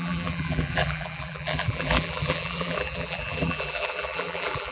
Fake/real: fake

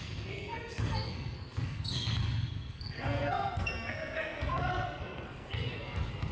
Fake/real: fake